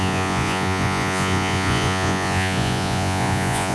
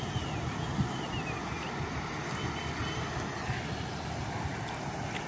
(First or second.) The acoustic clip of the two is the second